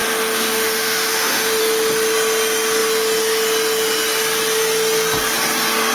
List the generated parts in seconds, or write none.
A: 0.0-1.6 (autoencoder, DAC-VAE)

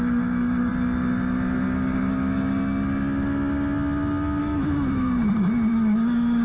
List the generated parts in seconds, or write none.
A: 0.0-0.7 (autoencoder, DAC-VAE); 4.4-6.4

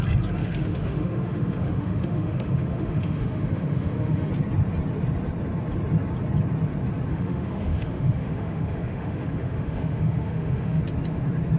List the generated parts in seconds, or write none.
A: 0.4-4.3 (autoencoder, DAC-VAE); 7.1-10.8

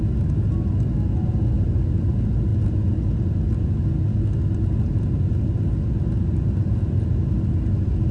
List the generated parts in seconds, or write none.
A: none